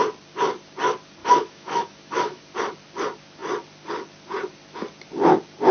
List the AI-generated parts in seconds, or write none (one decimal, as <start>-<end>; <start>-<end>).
1.2-2.4